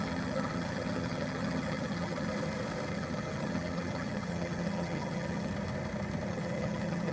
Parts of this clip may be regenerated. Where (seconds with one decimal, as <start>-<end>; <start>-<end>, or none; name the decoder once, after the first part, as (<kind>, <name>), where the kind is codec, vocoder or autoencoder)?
0.0-2.3 (vocoder, HiFi-GAN); 2.9-5.5; 6.3-7.1